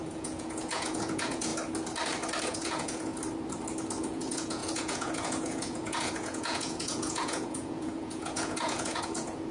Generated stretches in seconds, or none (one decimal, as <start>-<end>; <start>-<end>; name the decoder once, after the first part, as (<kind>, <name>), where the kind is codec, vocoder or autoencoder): 0.0-1.5 (vocoder, Vocos); 2.4-3.1; 4.0-9.5